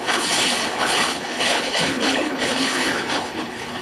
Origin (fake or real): fake